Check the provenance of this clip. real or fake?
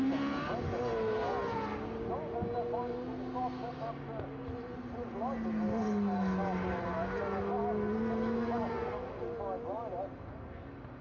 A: real